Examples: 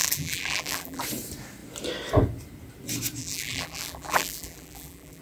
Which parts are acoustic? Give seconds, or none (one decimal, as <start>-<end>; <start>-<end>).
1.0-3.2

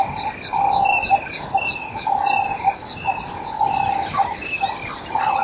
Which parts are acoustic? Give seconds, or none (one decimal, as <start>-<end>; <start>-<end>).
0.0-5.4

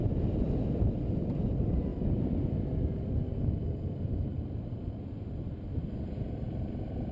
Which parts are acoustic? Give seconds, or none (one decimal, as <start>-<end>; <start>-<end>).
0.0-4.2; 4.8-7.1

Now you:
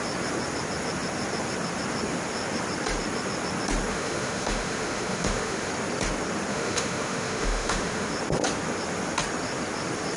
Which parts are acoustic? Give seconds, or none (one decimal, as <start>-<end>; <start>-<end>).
0.0-3.9; 5.7-6.5; 8.1-10.2

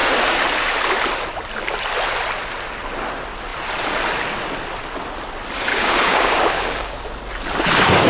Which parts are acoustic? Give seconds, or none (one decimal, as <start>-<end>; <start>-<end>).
0.0-5.7; 6.9-8.1

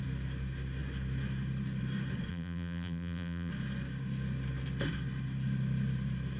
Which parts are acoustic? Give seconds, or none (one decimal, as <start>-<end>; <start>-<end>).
0.0-2.3; 3.5-6.4